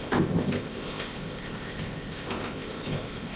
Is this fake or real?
fake